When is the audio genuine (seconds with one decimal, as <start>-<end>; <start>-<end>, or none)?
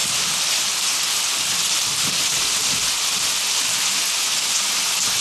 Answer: 0.0-5.2